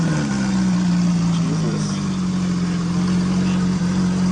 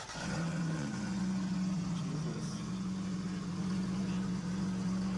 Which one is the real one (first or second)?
first